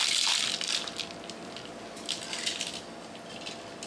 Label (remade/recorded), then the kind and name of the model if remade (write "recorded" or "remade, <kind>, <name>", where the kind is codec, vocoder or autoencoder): recorded